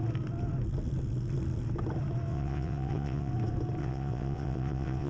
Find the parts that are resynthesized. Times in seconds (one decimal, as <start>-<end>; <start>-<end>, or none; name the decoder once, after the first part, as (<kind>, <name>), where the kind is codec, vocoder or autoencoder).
2.3-3.3 (vocoder, WaveNeXt); 3.8-5.1